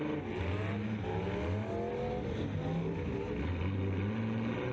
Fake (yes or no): no